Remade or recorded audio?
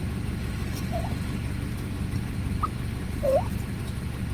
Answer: recorded